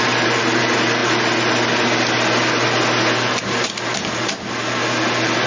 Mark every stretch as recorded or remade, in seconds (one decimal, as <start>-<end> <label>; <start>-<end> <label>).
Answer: 0.0-5.5 recorded